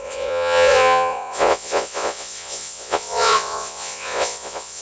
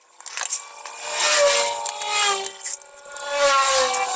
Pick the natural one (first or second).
second